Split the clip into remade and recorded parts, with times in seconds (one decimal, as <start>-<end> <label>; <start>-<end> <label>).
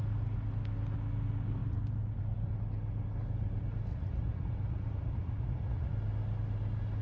0.0-3.9 recorded; 3.9-5.9 remade; 5.9-7.0 recorded